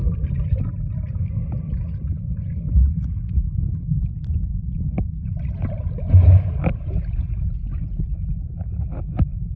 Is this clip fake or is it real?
real